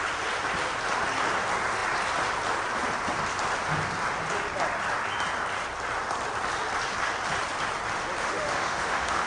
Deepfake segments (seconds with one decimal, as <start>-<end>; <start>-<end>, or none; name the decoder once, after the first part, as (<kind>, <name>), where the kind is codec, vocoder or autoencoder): 8.2-9.3 (autoencoder, DAC-VAE)